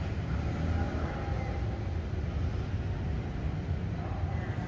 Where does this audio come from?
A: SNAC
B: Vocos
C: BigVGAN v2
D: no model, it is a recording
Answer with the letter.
D